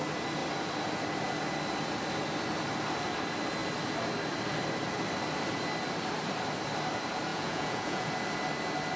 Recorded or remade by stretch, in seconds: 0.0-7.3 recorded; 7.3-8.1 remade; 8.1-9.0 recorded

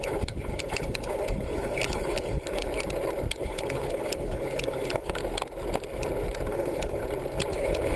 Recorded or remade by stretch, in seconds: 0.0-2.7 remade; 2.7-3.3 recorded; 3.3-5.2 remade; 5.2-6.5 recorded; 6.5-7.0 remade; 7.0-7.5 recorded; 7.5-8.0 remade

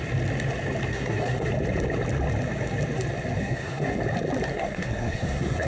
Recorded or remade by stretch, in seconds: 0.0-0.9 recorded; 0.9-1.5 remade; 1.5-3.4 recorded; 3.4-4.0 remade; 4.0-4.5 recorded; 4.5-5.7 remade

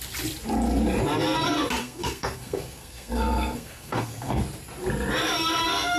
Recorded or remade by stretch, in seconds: 0.0-1.8 recorded; 1.8-4.4 remade; 4.4-6.0 recorded

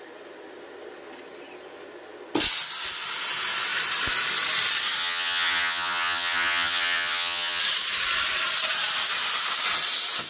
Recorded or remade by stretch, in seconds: 0.0-5.0 recorded; 5.0-7.6 remade; 7.6-10.3 recorded

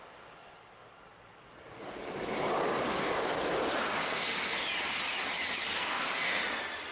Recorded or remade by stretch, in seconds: 0.0-4.0 recorded; 4.0-4.6 remade; 4.6-5.7 recorded; 5.7-6.4 remade; 6.4-6.9 recorded